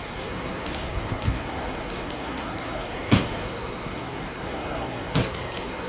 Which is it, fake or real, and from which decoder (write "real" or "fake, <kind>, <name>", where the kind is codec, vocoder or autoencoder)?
fake, codec, SNAC